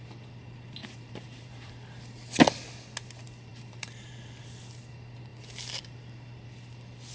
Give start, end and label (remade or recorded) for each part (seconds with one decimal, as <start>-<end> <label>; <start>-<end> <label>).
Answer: 0.0-0.8 recorded; 0.8-1.7 remade; 1.7-3.5 recorded; 3.5-4.1 remade; 4.1-7.1 recorded